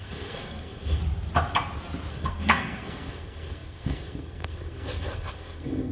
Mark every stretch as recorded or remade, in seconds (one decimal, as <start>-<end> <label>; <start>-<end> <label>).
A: 0.0-1.0 remade; 1.0-2.1 recorded; 2.1-5.9 remade